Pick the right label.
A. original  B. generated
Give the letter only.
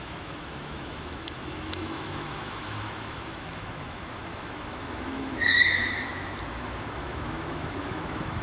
B